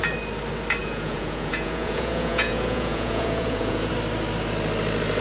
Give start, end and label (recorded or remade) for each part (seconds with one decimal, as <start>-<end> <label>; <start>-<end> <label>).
0.0-0.8 recorded; 0.8-3.9 remade; 3.9-5.2 recorded